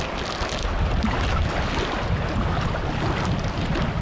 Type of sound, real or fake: real